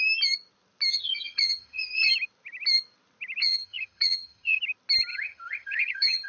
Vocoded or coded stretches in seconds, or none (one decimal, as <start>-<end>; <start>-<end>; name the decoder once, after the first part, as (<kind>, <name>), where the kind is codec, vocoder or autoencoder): 0.9-2.1 (vocoder, HiFi-GAN); 3.4-4.6; 5.1-6.3